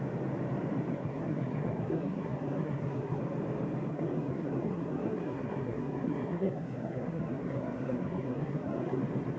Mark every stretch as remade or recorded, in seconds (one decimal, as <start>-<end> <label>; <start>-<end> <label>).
0.0-0.9 recorded; 0.9-3.2 remade; 3.2-3.9 recorded; 3.9-9.0 remade; 9.0-9.4 recorded